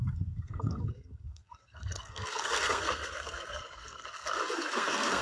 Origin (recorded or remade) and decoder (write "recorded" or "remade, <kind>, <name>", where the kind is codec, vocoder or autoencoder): remade, codec, SNAC